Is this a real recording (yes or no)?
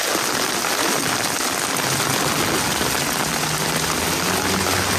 yes